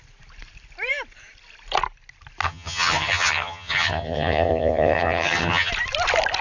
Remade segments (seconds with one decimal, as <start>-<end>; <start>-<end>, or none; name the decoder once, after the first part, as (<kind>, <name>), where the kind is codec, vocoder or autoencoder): 2.4-5.7 (vocoder, HiFi-GAN)